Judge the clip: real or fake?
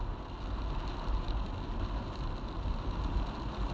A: real